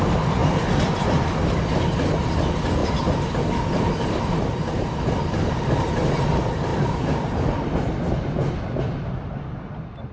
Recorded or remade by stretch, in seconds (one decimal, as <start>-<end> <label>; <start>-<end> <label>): 0.0-2.8 recorded; 2.8-5.5 remade; 5.5-6.7 recorded; 6.7-8.1 remade; 8.1-10.1 recorded